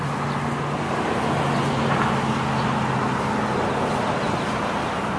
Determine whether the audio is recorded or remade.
recorded